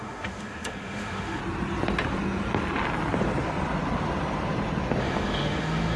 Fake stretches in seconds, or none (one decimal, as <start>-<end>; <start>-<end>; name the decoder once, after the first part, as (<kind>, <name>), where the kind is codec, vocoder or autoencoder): 0.0-1.4 (autoencoder, DAC-VAE); 5.0-6.0